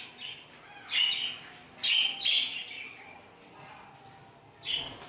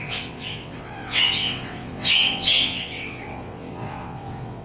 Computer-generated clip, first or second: second